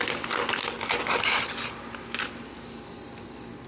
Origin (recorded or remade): remade